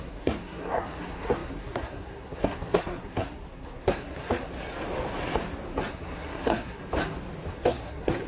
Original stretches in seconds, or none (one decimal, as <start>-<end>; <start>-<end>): 4.5-5.9; 6.8-7.5